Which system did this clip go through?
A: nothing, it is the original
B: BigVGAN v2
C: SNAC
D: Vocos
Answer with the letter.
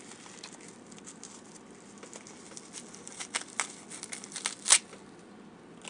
A